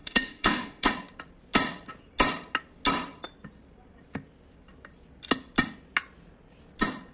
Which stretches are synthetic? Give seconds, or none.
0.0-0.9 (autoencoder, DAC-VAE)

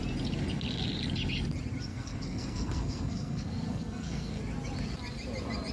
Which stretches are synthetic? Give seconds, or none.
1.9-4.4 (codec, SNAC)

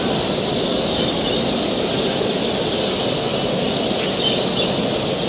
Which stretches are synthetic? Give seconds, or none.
none